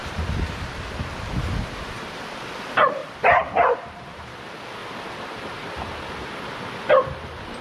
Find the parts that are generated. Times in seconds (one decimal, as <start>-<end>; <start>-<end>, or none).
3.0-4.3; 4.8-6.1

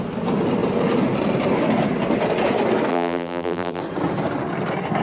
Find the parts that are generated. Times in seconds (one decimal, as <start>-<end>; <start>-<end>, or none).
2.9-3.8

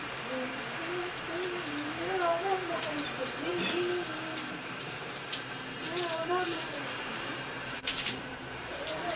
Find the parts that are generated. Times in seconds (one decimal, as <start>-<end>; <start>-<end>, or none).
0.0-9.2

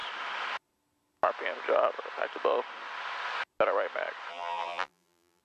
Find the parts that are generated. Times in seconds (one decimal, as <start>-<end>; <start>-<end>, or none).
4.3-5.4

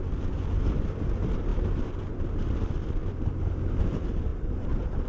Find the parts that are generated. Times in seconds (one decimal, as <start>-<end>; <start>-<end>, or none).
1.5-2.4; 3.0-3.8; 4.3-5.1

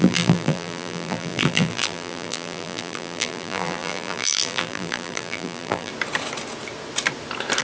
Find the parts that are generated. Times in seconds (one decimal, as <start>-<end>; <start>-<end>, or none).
0.0-5.9